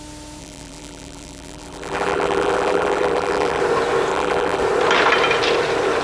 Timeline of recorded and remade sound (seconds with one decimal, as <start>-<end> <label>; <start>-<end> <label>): 0.0-0.4 recorded; 0.4-3.6 remade; 3.6-4.1 recorded; 4.1-4.6 remade; 4.6-6.0 recorded